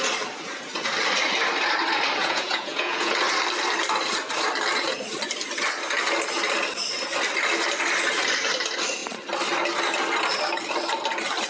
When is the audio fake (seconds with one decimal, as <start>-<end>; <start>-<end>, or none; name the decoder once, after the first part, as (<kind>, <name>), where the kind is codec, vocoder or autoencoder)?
2.2-3.1 (vocoder, Vocos)